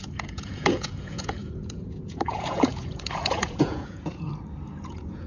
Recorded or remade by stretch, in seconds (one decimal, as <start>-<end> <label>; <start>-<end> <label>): 0.0-4.3 remade; 4.3-4.8 recorded; 4.8-5.3 remade